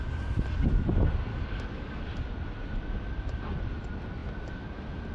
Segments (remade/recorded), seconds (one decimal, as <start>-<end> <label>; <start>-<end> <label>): 0.0-1.3 recorded; 1.3-2.0 remade; 2.0-5.1 recorded